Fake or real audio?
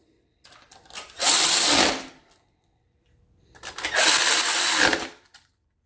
fake